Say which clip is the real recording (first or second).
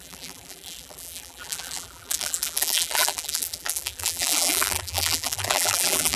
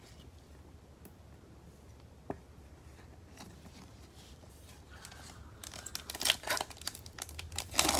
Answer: second